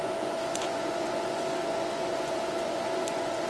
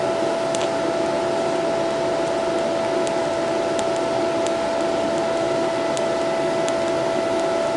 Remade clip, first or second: first